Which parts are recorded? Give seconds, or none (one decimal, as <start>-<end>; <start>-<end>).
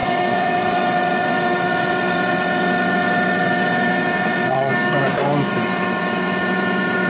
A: 4.7-5.5